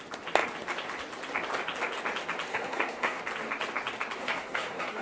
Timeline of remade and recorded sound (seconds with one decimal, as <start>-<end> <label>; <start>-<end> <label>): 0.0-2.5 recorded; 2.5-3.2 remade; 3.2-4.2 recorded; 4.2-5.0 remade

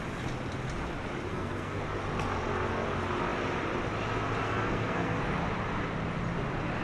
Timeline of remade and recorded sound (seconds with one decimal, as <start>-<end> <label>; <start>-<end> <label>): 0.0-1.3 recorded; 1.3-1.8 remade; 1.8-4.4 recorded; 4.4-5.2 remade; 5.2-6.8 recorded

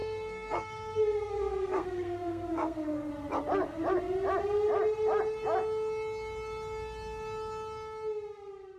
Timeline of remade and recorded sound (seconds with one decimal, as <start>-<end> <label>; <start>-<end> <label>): 0.0-3.1 remade; 3.1-8.8 recorded